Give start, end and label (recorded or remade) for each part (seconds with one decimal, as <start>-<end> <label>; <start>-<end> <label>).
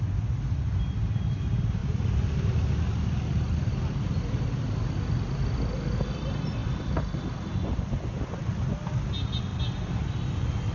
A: 0.0-10.7 recorded